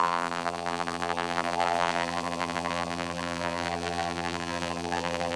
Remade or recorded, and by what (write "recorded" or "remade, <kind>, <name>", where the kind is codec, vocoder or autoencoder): remade, vocoder, BigVGAN v2